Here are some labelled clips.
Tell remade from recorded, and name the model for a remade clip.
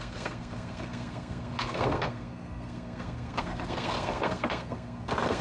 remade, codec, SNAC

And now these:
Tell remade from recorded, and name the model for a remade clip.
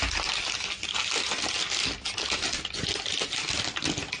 recorded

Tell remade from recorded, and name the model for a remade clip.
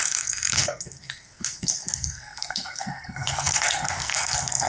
remade, codec, SNAC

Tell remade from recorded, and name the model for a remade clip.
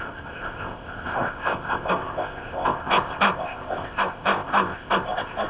remade, codec, ZipCodec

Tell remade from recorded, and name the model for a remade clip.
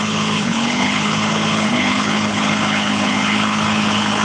remade, codec, HILCodec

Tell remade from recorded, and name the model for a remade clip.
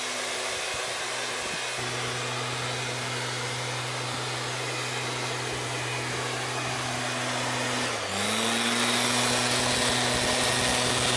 recorded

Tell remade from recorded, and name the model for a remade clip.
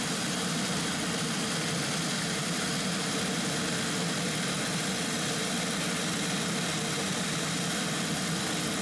recorded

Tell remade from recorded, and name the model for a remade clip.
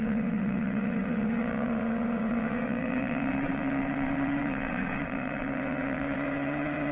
remade, vocoder, WaveNeXt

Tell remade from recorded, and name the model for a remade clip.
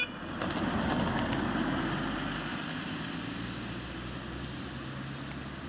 recorded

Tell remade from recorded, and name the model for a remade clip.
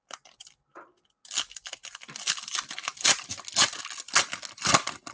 recorded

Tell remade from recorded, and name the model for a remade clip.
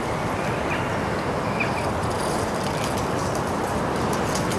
recorded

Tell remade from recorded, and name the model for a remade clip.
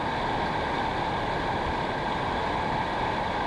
recorded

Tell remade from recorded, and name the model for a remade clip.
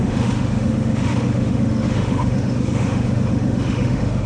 remade, autoencoder, DAC-VAE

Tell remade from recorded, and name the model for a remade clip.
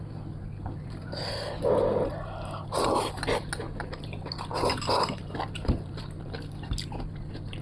recorded